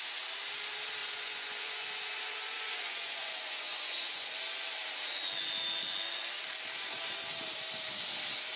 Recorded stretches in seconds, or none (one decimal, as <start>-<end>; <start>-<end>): 0.0-1.0; 4.3-8.6